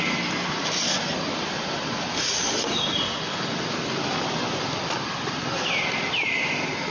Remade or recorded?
recorded